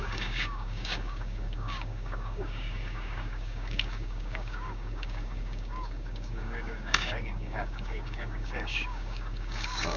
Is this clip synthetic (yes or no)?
yes